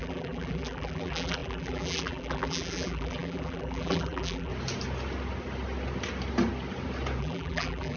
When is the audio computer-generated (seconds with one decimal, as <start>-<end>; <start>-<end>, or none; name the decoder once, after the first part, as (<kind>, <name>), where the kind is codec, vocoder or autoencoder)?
0.0-4.5 (vocoder, BigVGAN v2); 7.2-8.0